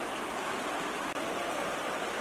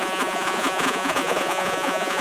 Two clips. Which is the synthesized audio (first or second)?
second